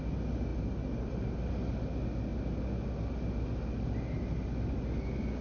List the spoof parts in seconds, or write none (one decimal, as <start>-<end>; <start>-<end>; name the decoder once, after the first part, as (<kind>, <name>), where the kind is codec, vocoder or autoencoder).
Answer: none